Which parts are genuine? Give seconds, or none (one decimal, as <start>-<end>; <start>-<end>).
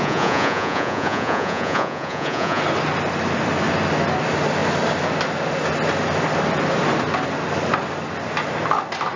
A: 2.6-9.2